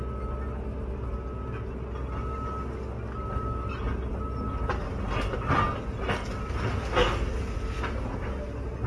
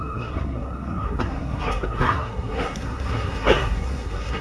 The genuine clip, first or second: first